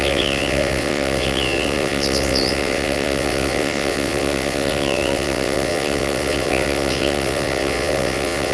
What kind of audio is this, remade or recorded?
remade